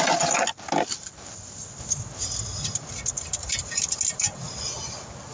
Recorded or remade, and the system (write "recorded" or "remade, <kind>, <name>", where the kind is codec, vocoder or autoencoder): recorded